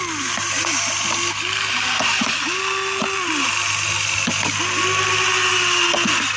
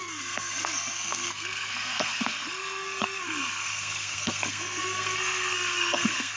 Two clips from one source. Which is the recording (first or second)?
first